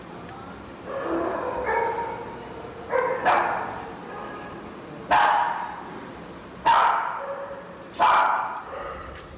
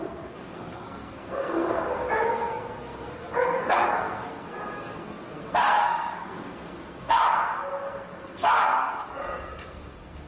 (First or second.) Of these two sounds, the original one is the first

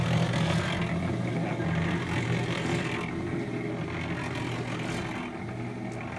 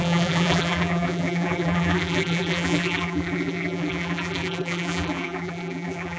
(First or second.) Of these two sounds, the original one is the first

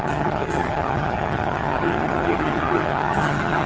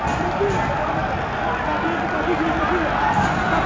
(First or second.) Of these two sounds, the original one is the second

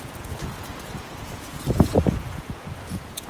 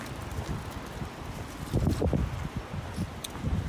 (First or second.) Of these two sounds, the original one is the second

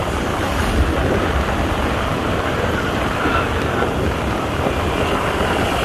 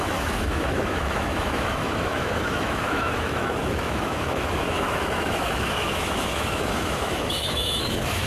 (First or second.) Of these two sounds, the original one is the first